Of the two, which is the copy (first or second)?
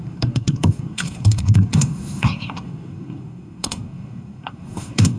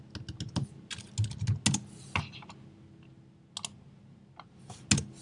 first